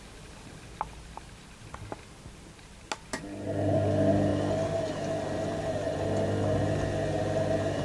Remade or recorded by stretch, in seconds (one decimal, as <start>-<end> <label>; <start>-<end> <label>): 0.0-7.8 recorded